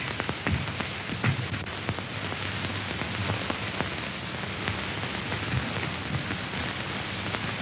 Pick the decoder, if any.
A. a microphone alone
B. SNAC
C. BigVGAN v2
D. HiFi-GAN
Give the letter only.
A